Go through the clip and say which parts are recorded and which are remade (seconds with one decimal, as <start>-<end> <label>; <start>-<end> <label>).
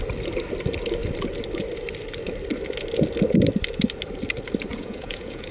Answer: 0.0-4.7 recorded; 4.7-5.5 remade